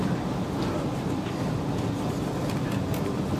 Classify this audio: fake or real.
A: real